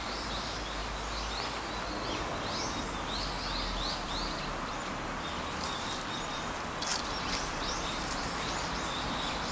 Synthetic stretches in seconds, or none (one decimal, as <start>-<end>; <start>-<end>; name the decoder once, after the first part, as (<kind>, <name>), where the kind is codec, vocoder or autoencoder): 0.0-0.8 (vocoder, BigVGAN v2); 4.0-4.7; 7.4-9.5